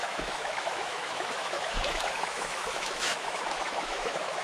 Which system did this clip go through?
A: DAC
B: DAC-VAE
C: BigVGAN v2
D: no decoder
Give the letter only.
B